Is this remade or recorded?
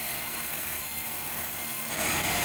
remade